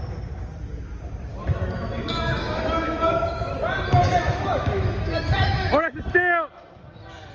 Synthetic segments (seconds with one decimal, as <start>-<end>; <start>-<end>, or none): 1.3-3.5; 4.0-5.7